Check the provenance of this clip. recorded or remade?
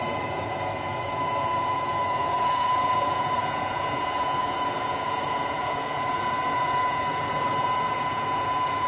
remade